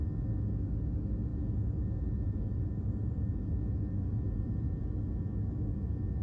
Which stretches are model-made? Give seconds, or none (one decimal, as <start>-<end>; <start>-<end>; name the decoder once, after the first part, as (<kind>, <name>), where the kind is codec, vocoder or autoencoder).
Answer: 1.3-5.0 (vocoder, BigVGAN v2)